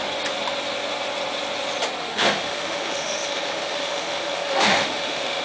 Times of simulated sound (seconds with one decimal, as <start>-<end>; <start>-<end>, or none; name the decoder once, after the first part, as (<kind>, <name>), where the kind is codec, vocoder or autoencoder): 2.0-5.4 (autoencoder, DAC-VAE)